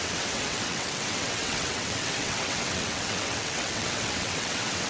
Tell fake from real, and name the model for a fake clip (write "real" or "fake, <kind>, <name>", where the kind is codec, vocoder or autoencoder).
fake, vocoder, WaveNeXt